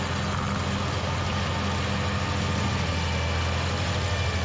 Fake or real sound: real